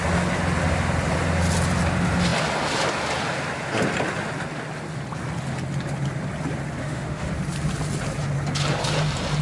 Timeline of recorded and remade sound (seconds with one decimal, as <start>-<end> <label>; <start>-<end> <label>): 0.0-6.8 recorded; 6.8-7.3 remade; 7.3-9.4 recorded